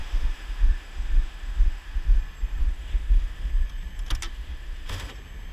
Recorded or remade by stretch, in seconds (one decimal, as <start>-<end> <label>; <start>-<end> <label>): 0.0-2.2 remade; 2.2-2.6 recorded; 2.6-3.5 remade; 3.5-4.3 recorded; 4.3-5.1 remade; 5.1-5.5 recorded